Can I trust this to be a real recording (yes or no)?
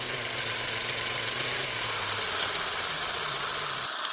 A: yes